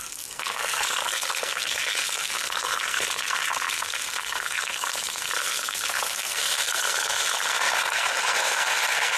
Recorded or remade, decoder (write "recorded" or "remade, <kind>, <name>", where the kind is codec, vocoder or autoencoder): remade, codec, SNAC